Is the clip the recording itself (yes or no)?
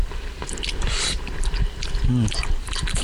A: no